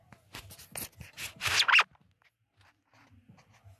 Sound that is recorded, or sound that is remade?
recorded